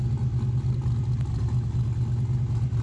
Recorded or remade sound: recorded